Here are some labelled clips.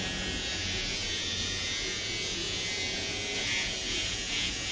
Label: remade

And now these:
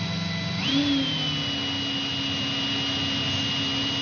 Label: recorded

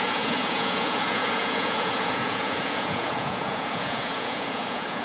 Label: remade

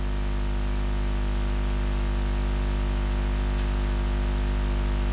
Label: recorded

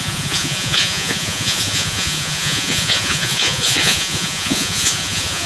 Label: remade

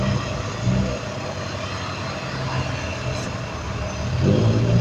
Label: recorded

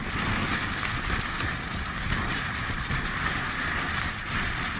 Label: recorded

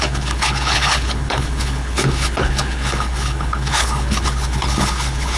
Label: remade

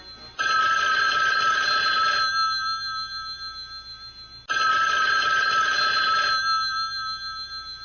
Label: recorded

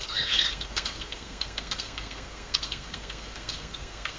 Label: remade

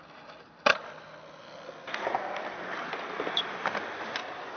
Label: recorded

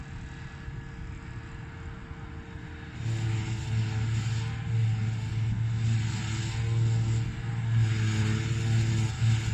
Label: recorded